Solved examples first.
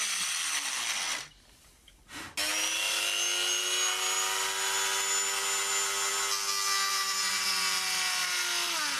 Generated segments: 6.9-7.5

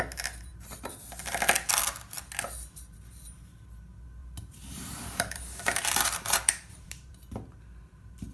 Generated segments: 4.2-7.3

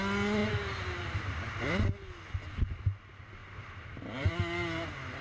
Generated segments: 0.4-1.4; 3.4-4.3

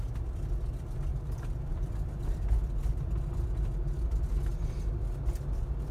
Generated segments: 1.1-1.9

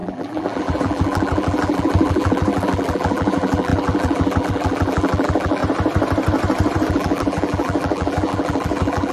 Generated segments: 0.0-5.6; 6.9-9.1

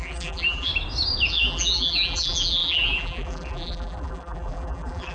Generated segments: 0.0-0.7; 1.3-5.1

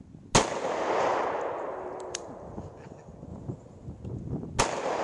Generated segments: 1.1-2.7